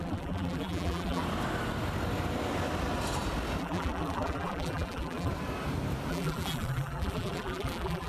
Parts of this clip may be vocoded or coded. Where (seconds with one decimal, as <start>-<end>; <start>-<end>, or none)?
0.0-1.2; 3.6-5.3; 6.1-8.1